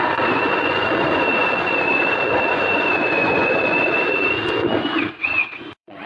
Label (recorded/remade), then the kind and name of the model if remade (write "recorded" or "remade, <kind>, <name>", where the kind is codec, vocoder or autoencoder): remade, vocoder, Vocos